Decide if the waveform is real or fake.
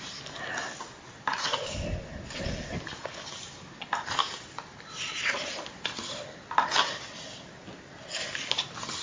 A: real